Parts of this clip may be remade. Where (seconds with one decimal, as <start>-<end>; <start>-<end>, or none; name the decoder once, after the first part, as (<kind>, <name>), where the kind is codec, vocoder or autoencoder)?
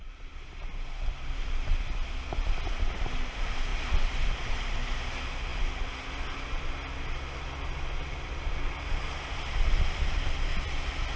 none